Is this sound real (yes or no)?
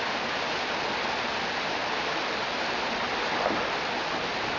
yes